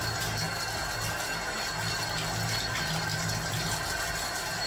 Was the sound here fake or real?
real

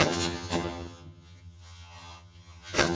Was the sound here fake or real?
fake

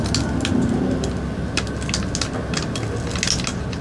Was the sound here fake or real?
real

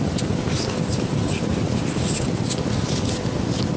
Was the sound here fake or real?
real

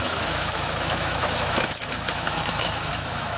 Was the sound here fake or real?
fake